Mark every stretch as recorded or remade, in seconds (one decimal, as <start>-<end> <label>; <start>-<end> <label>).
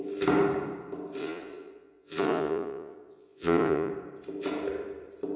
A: 0.0-1.2 recorded; 1.2-3.9 remade; 3.9-5.4 recorded